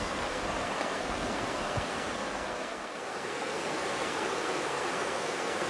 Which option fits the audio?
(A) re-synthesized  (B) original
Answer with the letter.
A